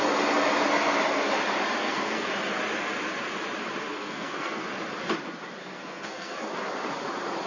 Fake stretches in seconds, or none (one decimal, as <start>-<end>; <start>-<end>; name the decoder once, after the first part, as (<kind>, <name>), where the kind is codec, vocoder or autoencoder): 1.8-2.3 (codec, SNAC); 3.9-4.6; 5.6-6.5